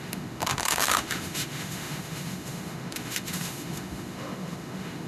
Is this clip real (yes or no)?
no